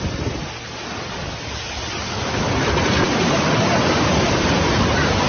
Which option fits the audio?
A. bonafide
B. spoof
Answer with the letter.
A